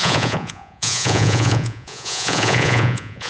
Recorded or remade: remade